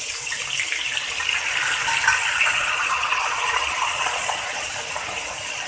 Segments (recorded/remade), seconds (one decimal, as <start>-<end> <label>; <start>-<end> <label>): 0.0-2.2 recorded; 2.2-4.7 remade; 4.7-5.7 recorded